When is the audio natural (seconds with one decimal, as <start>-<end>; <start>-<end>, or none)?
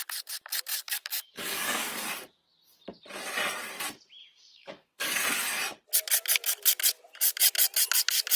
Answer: 0.0-0.7; 2.1-4.2; 5.1-8.4